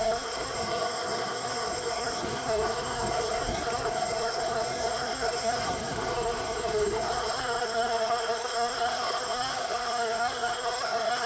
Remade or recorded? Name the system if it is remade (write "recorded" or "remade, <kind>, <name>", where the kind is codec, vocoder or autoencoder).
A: remade, codec, SNAC